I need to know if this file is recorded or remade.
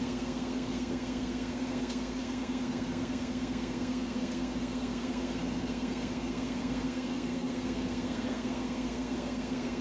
remade